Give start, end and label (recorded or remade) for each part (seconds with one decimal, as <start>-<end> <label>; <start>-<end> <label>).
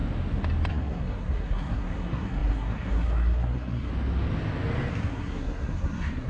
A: 0.0-0.7 recorded; 0.7-3.9 remade; 3.9-4.9 recorded; 4.9-6.3 remade